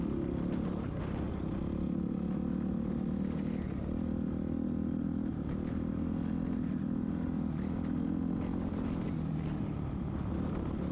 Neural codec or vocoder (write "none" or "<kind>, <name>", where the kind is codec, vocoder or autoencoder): none